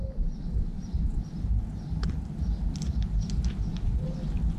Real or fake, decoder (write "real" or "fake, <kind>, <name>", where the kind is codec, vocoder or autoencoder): real